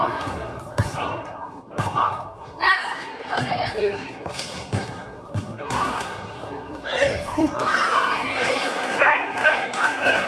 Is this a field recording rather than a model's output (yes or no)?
no